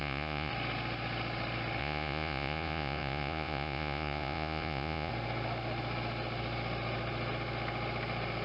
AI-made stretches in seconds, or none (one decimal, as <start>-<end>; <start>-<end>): 0.0-0.5; 1.8-5.1